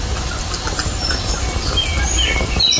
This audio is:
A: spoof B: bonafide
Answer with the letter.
B